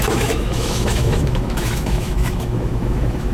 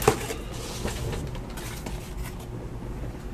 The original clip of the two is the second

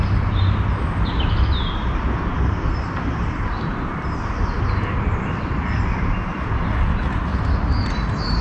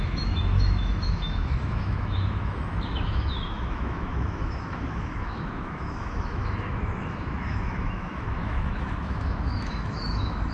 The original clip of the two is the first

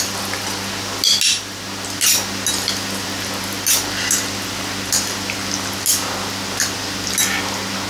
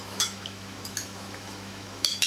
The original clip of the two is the first